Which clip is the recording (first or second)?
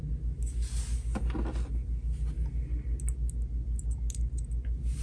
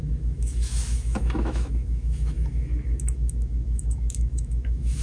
first